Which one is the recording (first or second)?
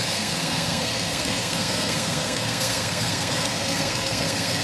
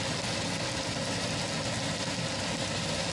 second